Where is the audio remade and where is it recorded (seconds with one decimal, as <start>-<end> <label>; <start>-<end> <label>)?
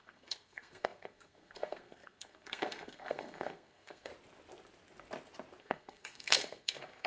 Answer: 0.0-4.1 remade; 4.1-5.6 recorded; 5.6-7.1 remade